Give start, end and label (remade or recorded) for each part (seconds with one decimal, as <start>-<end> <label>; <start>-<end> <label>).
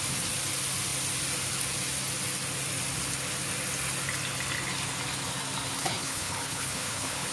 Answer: 0.0-5.8 recorded; 5.8-7.3 remade